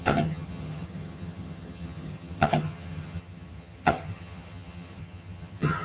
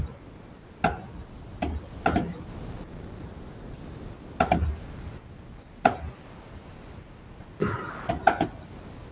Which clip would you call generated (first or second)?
first